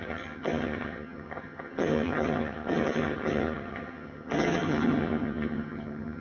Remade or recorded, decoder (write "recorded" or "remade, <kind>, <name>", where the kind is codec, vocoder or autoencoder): remade, vocoder, HiFi-GAN